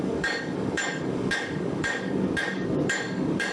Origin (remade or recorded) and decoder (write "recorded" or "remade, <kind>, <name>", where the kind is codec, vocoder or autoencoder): remade, codec, DAC